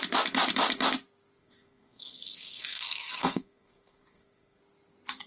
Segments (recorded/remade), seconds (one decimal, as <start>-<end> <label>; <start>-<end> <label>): 0.0-1.4 recorded; 1.4-4.6 remade; 4.6-5.3 recorded